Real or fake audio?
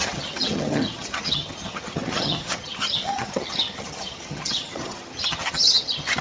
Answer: fake